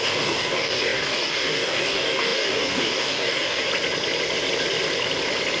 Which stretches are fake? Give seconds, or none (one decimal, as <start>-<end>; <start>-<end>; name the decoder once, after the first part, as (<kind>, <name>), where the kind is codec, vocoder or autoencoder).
0.0-3.7 (codec, DAC)